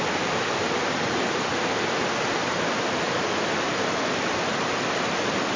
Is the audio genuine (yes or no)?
no